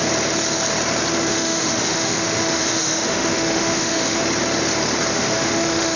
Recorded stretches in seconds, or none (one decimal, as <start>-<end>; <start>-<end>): 0.0-1.3; 4.2-5.1